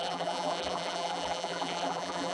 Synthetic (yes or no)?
yes